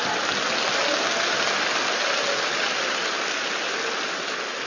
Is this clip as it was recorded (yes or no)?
yes